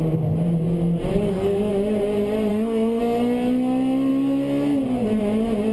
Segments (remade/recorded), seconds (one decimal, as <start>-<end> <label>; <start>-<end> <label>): 0.0-1.1 recorded; 1.1-1.7 remade; 1.7-2.5 recorded; 2.5-3.0 remade; 3.0-5.7 recorded